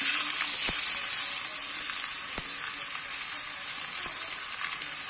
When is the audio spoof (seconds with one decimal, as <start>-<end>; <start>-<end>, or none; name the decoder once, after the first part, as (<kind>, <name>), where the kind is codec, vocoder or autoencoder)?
none